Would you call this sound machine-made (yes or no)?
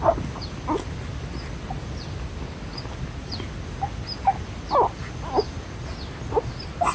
no